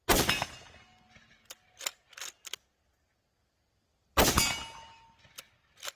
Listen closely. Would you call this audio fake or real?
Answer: real